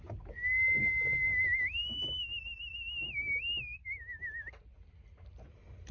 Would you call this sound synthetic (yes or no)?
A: no